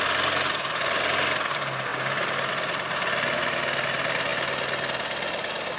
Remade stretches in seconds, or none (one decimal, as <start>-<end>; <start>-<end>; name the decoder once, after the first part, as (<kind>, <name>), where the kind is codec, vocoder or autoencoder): none